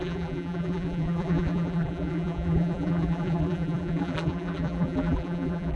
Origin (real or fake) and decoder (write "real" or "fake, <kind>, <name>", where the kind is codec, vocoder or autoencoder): fake, vocoder, BigVGAN v2